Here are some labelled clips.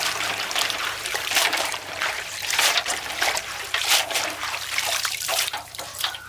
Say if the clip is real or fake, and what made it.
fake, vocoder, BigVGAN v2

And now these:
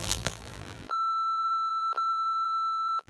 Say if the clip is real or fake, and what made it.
fake, vocoder, BigVGAN v2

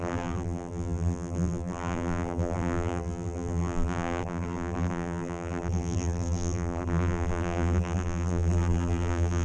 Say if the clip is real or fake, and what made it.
fake, vocoder, BigVGAN v2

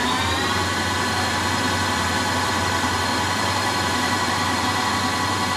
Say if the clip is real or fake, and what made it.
fake, vocoder, BigVGAN v2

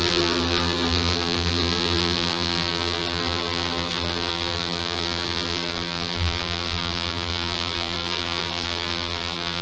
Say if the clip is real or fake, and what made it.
fake, vocoder, BigVGAN v2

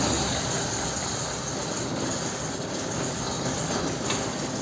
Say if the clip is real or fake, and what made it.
real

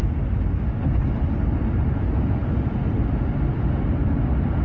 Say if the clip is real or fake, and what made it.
real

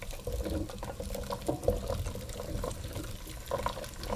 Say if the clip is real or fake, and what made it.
fake, vocoder, BigVGAN v2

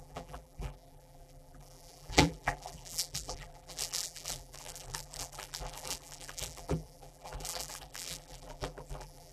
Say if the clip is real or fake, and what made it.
fake, vocoder, BigVGAN v2